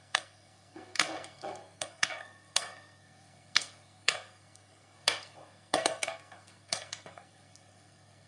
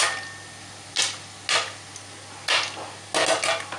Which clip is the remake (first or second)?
first